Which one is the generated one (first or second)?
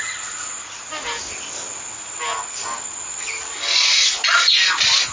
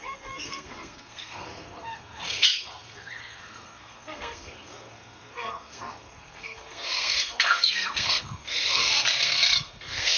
second